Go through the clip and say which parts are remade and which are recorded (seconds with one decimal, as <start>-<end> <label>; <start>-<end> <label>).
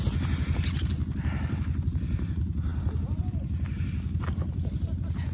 0.0-5.3 recorded